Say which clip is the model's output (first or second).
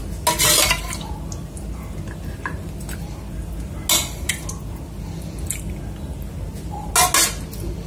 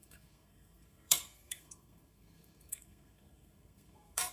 second